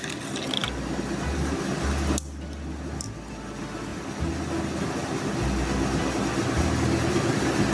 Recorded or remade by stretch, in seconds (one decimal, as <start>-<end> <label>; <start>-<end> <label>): 0.0-7.7 recorded